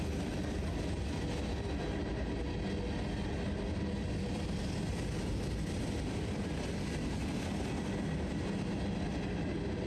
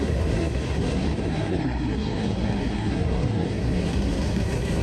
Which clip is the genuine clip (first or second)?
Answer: first